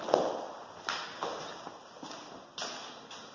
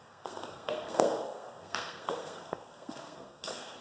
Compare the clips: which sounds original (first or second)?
first